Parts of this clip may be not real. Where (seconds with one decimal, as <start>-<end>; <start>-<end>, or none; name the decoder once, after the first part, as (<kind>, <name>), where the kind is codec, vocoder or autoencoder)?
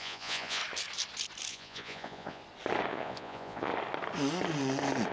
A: 0.0-0.6 (vocoder, Vocos); 1.5-2.4; 2.9-3.7